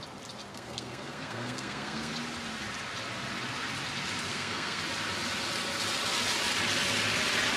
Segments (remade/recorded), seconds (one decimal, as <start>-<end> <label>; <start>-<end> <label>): 0.0-0.5 recorded; 0.5-2.1 remade; 2.1-4.3 recorded; 4.3-4.8 remade; 4.8-7.6 recorded